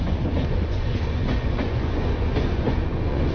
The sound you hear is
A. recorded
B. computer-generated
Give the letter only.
B